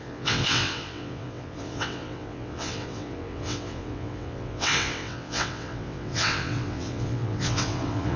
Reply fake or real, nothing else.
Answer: fake